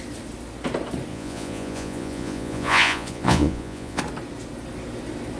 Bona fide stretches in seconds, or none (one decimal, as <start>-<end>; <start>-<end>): 0.0-1.1; 4.0-5.4